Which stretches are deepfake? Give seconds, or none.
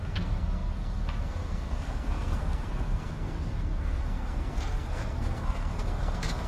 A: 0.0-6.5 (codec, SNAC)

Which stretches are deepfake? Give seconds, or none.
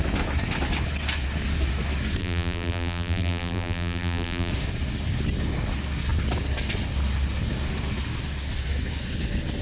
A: 2.2-4.5 (vocoder, BigVGAN v2)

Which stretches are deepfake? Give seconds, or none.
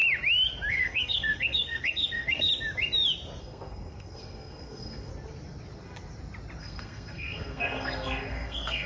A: 0.7-2.5 (codec, SNAC); 3.4-5.1; 6.6-8.9